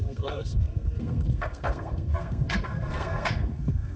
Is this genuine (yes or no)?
no